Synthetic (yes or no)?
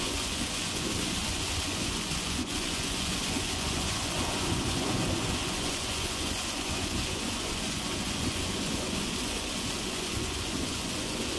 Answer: yes